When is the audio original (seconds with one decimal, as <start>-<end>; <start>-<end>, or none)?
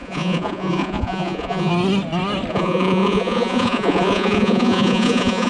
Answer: 1.7-2.5